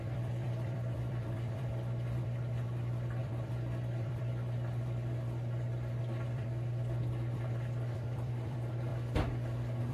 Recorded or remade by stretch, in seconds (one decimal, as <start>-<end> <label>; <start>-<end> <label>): 0.0-1.7 remade; 1.7-2.2 recorded; 2.2-8.9 remade; 8.9-9.9 recorded